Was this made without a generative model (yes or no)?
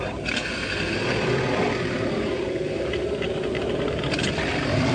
yes